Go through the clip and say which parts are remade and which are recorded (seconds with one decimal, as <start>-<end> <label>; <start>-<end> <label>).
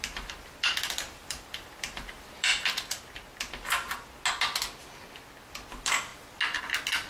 0.0-2.5 remade; 2.5-5.5 recorded; 5.5-6.1 remade; 6.1-6.6 recorded; 6.6-7.1 remade